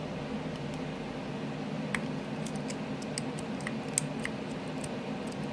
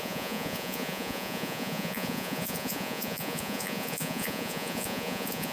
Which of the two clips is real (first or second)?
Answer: first